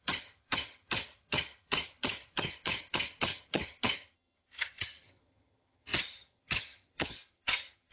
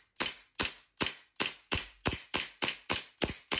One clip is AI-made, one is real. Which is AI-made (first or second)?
first